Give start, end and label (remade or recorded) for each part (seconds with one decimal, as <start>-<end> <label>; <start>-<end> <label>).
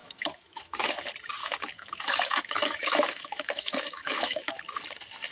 0.0-0.9 remade; 0.9-1.4 recorded; 1.4-4.6 remade; 4.6-5.3 recorded